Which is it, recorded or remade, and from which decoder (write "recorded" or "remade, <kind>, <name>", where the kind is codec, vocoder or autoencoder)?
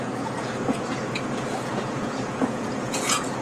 remade, vocoder, Vocos